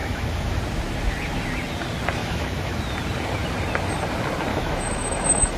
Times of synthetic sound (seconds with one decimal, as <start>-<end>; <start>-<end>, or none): 0.0-0.6; 2.2-2.8; 4.5-5.6

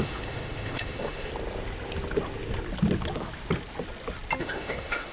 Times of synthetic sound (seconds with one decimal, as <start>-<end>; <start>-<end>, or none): 0.0-1.3; 4.4-5.1